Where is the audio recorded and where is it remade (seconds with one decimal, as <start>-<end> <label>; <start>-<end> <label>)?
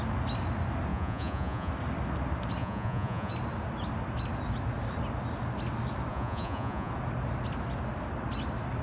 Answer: 0.0-0.9 recorded; 0.9-1.7 remade; 1.7-2.6 recorded; 2.6-3.3 remade; 3.3-6.1 recorded; 6.1-6.9 remade; 6.9-8.8 recorded